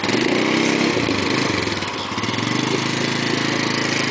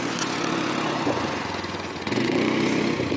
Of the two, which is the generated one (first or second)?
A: second